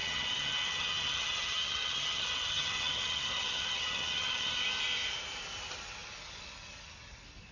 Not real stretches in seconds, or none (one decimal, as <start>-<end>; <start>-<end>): 0.0-4.5